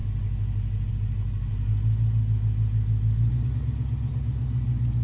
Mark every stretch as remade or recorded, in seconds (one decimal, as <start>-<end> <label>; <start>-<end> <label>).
0.0-5.0 recorded